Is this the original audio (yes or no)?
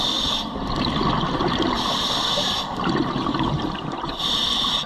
yes